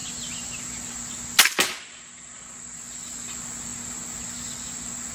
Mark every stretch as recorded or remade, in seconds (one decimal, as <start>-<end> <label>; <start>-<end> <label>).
0.0-5.1 recorded